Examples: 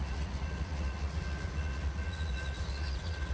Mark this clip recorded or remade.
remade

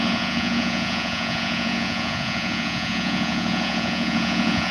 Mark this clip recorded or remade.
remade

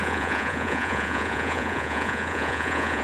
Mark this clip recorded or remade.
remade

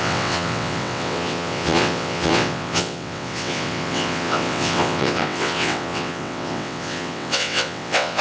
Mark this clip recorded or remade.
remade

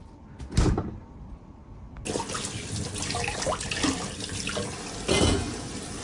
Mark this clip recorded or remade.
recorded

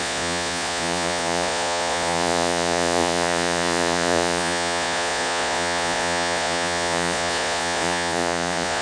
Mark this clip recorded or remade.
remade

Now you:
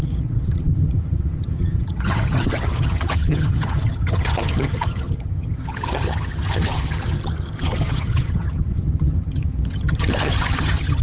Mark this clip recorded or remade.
remade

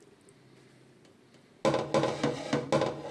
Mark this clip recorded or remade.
recorded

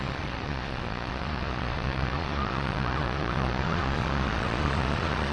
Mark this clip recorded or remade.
remade